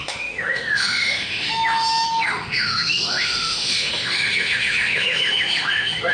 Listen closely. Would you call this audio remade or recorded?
remade